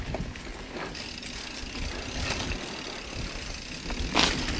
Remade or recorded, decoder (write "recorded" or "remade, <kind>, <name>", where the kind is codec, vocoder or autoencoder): recorded